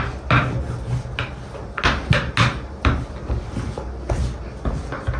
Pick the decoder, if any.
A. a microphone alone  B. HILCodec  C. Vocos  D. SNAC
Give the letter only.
A